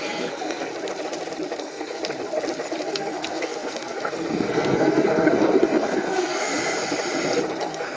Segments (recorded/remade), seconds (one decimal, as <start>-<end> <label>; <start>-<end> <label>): 0.0-0.7 remade; 0.7-1.6 recorded; 1.6-2.0 remade; 2.0-2.8 recorded; 2.8-6.5 remade; 6.5-7.6 recorded; 7.6-8.0 remade